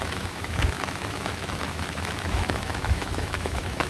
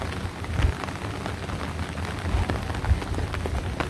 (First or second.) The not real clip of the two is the first